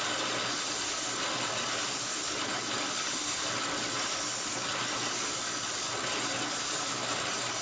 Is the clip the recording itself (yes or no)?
yes